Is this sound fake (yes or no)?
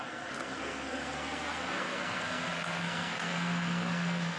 yes